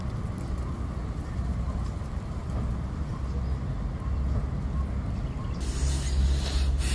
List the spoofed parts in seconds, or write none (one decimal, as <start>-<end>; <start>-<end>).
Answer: 4.4-5.7